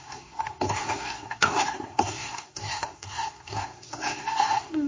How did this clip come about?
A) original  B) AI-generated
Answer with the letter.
B